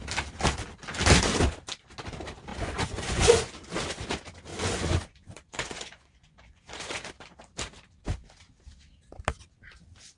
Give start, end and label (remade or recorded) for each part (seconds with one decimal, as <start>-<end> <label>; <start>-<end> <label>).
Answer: 0.0-2.5 recorded; 2.5-3.5 remade; 3.5-4.5 recorded; 4.5-7.1 remade; 7.1-10.2 recorded